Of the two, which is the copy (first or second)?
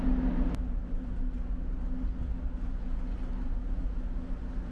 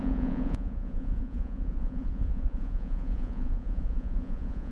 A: second